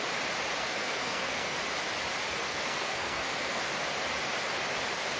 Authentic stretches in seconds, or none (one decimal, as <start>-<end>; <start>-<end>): 0.0-0.6; 1.6-2.4; 3.6-5.2